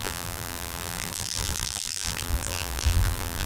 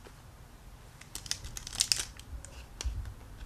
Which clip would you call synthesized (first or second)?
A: first